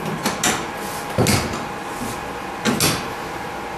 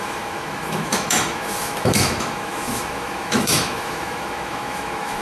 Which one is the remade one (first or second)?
second